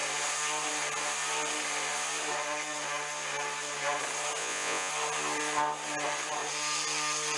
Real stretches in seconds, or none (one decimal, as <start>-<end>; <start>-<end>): 0.0-4.4; 4.9-7.4